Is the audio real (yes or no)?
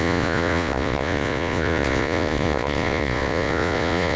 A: no